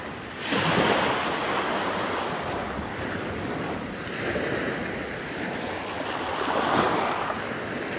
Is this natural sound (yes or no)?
yes